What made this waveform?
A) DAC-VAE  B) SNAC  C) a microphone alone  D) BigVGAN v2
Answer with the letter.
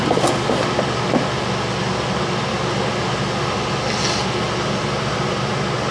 C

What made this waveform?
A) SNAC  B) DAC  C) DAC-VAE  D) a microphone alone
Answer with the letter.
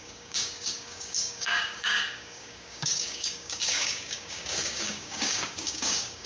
B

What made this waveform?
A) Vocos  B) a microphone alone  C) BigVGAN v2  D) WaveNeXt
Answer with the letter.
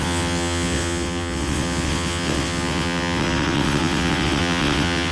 D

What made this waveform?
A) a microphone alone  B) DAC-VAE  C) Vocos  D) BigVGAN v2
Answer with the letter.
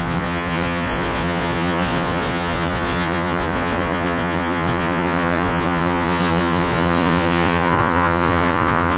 C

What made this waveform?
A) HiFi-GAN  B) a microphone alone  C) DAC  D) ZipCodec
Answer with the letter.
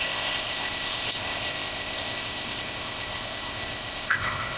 D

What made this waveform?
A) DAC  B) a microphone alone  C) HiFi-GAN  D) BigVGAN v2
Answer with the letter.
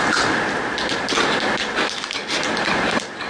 B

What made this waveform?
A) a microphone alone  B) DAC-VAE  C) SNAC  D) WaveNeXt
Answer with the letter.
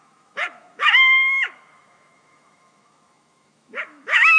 B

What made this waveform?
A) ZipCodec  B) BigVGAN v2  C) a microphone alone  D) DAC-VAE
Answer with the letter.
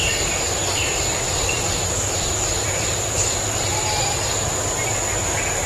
B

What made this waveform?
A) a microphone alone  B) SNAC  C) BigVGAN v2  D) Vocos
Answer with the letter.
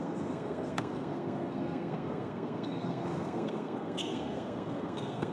B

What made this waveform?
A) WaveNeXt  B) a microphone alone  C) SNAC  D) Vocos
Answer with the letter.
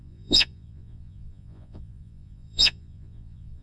D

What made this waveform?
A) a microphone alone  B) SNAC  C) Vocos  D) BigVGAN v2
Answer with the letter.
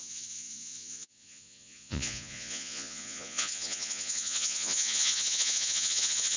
C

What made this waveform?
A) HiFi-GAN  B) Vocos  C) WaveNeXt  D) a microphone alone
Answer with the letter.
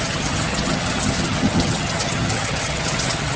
A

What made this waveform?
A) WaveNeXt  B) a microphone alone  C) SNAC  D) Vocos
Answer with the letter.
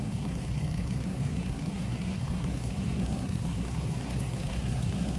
C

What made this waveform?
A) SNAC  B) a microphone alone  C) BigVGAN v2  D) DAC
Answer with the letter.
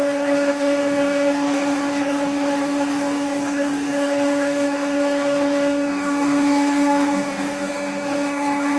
D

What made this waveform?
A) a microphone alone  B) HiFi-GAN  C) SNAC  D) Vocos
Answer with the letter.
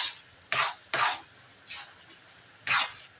A